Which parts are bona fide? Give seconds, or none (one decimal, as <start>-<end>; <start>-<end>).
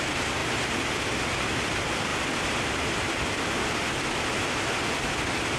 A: 0.0-2.1; 4.5-5.6